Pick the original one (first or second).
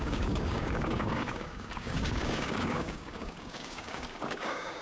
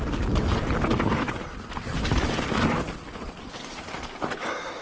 second